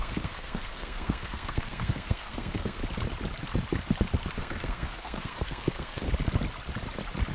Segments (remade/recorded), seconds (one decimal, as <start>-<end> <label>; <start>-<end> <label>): 0.0-2.8 remade; 2.8-4.4 recorded; 4.4-6.1 remade; 6.1-7.3 recorded